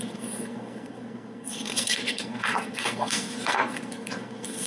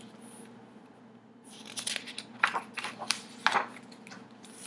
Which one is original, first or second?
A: second